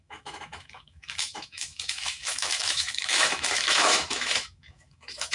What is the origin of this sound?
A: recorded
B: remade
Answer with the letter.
B